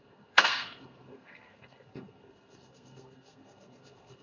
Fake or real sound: fake